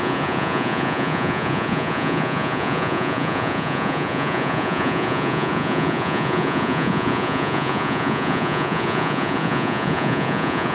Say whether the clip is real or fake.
fake